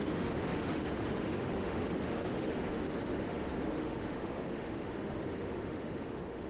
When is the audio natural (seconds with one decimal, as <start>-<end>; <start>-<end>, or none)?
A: none